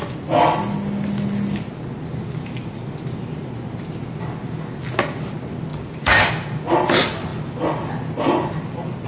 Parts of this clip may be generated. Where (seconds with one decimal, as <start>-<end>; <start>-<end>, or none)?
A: 5.7-6.3